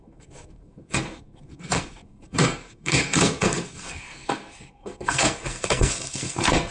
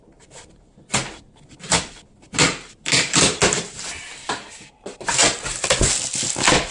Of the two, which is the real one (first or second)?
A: second